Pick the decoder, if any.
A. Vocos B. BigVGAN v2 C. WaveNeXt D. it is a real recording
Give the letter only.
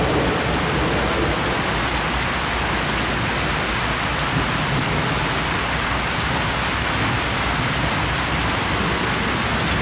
D